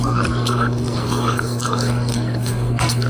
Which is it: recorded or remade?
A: remade